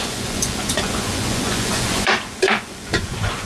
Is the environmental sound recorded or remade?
remade